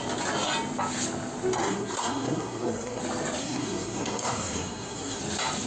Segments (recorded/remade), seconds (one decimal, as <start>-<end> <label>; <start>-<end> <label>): 0.0-1.6 recorded; 1.6-3.0 remade; 3.0-3.4 recorded; 3.4-5.2 remade; 5.2-5.7 recorded